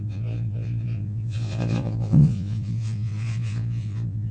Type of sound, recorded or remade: remade